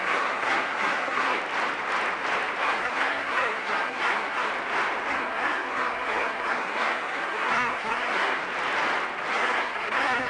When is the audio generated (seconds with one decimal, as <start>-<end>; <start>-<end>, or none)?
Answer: 0.0-1.4; 2.6-4.5; 5.1-8.4; 9.3-10.3